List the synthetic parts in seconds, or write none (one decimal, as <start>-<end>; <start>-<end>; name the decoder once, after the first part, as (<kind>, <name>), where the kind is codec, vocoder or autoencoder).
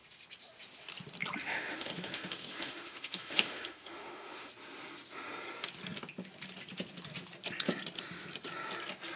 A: 1.4-4.5 (autoencoder, DAC-VAE)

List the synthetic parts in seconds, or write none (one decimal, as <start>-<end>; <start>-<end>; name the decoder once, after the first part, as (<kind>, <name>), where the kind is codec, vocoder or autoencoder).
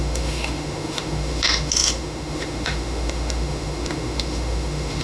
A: 0.0-5.0 (autoencoder, DAC-VAE)